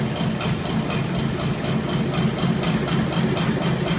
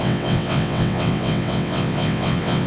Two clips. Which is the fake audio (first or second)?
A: second